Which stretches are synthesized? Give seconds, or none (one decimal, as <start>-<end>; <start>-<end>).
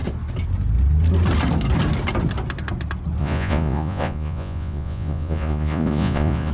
3.2-6.5